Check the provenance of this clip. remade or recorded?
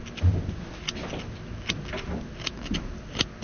recorded